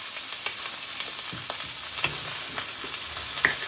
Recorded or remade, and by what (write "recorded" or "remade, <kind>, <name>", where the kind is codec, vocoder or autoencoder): recorded